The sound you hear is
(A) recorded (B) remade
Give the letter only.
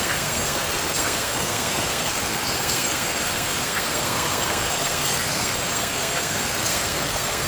B